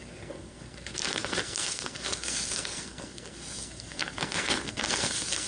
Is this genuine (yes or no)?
no